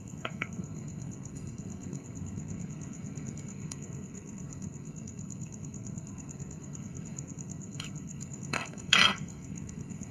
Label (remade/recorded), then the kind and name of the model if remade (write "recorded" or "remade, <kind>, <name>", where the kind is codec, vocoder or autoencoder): remade, codec, SNAC